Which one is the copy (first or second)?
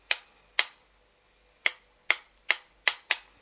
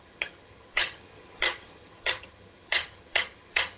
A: second